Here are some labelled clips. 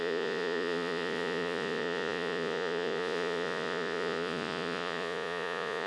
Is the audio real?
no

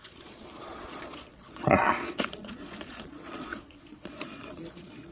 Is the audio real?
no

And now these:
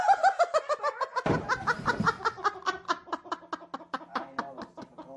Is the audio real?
yes